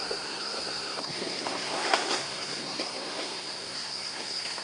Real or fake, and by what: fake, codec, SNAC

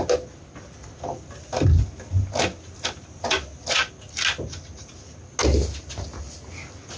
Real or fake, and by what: real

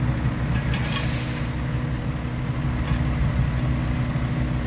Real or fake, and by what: real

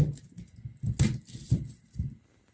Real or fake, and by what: real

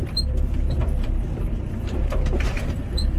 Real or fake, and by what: fake, vocoder, BigVGAN v2